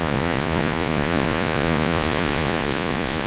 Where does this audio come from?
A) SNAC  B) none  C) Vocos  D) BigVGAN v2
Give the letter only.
C